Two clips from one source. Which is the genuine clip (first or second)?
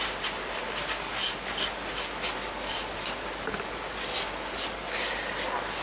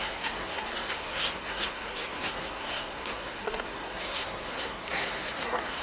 first